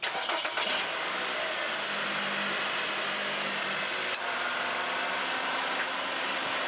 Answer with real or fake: real